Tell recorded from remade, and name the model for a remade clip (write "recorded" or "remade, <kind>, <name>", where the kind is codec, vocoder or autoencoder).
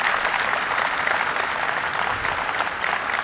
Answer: recorded